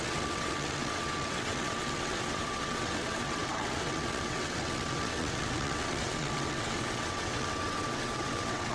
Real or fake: fake